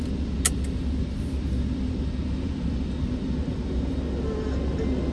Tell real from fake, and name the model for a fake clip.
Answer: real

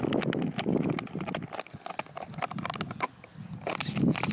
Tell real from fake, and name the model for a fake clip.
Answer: real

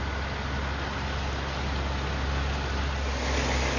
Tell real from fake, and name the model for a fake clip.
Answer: real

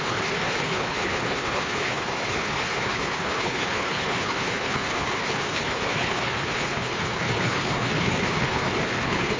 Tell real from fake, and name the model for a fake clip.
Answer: fake, codec, HILCodec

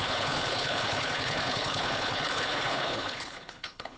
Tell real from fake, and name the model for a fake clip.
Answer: fake, codec, HILCodec